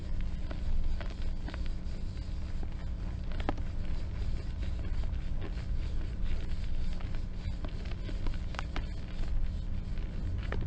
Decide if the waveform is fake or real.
real